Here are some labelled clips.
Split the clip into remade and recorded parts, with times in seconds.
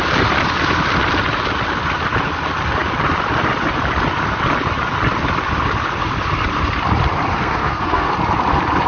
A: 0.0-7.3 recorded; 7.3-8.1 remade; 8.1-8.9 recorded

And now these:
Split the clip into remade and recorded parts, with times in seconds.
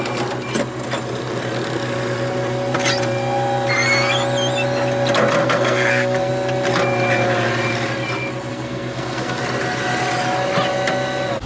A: 0.0-5.4 recorded; 5.4-6.3 remade; 6.3-8.5 recorded; 8.5-9.4 remade; 9.4-11.5 recorded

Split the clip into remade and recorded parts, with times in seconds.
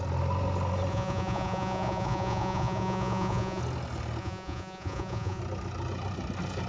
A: 0.0-0.9 recorded; 0.9-3.6 remade; 3.6-4.2 recorded; 4.2-5.4 remade; 5.4-6.7 recorded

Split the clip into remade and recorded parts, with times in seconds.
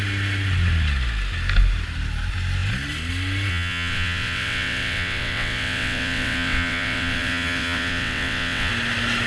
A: 0.0-3.5 recorded; 3.5-8.7 remade; 8.7-9.3 recorded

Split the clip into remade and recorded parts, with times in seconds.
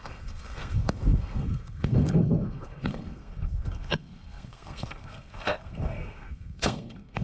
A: 0.0-7.2 remade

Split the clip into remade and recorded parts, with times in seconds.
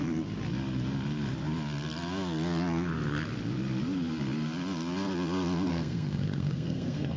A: 0.0-5.7 recorded; 5.7-7.2 remade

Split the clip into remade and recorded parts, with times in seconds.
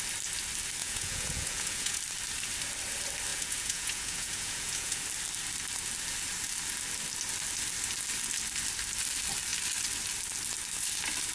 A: 0.0-0.8 recorded; 0.8-2.0 remade; 2.0-3.3 recorded; 3.3-5.0 remade; 5.0-11.3 recorded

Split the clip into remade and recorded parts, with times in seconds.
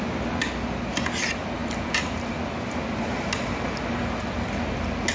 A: 0.0-5.1 recorded